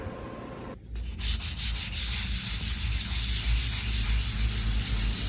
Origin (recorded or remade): recorded